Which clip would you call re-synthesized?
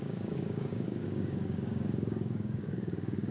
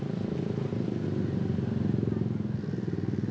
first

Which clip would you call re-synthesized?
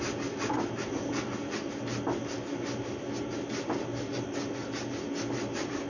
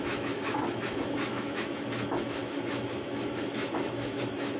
second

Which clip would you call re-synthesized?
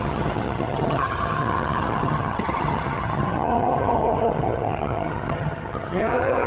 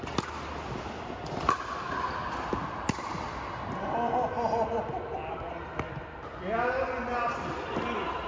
first